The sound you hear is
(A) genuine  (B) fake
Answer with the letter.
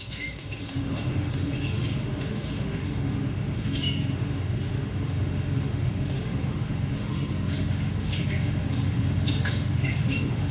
B